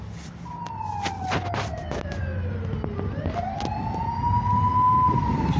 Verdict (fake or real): real